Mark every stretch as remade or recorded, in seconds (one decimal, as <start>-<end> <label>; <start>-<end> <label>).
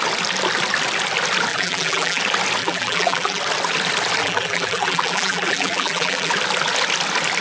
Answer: 0.0-1.5 recorded; 1.5-2.2 remade; 2.2-2.6 recorded; 2.6-3.4 remade; 3.4-4.2 recorded; 4.2-6.3 remade; 6.3-7.4 recorded